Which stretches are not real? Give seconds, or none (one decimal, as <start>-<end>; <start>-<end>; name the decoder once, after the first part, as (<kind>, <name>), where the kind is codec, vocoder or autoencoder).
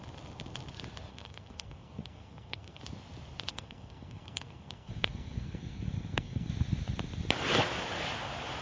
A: 1.1-2.8 (codec, SNAC); 3.5-6.5